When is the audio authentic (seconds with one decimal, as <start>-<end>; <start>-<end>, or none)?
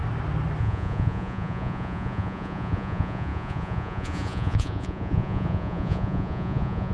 0.0-0.6